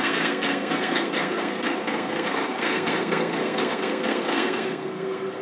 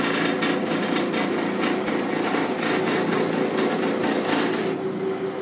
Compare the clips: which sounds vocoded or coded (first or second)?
first